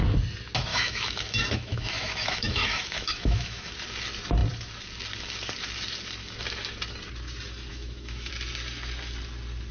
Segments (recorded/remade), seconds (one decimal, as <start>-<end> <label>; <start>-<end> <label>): 0.0-0.7 recorded; 0.7-3.7 remade; 3.7-7.7 recorded; 7.7-8.3 remade; 8.3-9.7 recorded

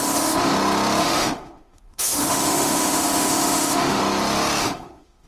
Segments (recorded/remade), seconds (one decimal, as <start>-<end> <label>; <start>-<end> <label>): 0.0-0.5 remade; 0.5-1.0 recorded; 1.0-4.0 remade; 4.0-4.6 recorded; 4.6-5.3 remade

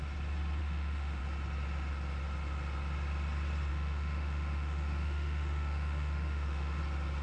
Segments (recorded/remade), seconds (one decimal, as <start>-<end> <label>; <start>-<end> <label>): 0.0-0.6 recorded; 0.6-1.2 remade; 1.2-3.7 recorded; 3.7-6.8 remade; 6.8-7.2 recorded